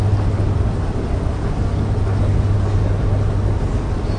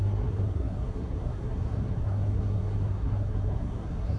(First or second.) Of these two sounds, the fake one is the second